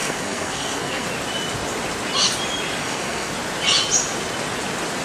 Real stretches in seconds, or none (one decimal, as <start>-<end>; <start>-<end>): 1.1-2.8; 3.3-5.0